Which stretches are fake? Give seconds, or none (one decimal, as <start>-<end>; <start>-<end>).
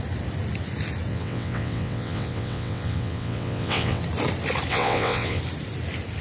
1.1-4.0; 4.7-5.4